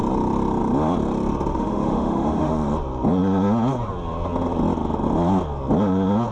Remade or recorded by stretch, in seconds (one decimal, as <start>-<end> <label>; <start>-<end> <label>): 0.0-1.5 recorded; 1.5-2.5 remade; 2.5-6.3 recorded